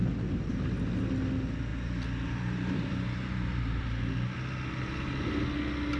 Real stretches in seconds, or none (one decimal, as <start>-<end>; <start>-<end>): 0.0-1.7; 4.0-6.0